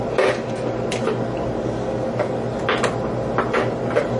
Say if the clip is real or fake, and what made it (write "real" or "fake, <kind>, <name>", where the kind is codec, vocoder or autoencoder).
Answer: fake, vocoder, BigVGAN v2